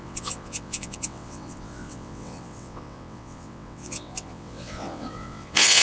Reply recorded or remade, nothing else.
remade